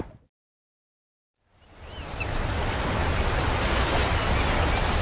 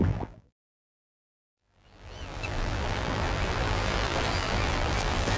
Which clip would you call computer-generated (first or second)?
second